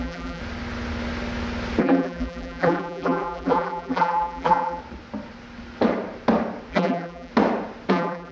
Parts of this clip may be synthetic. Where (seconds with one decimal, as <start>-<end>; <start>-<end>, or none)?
0.0-0.4; 1.8-4.8; 6.7-7.3; 7.9-8.3